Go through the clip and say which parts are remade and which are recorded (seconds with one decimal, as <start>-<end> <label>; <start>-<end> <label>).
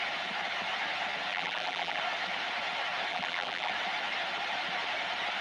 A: 0.0-1.3 recorded; 1.3-2.0 remade; 2.0-3.1 recorded; 3.1-3.7 remade; 3.7-5.4 recorded